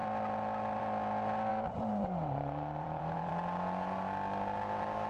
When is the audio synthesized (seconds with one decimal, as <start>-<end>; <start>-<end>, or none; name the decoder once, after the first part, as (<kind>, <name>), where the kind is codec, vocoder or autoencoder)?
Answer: 1.5-3.3 (vocoder, BigVGAN v2)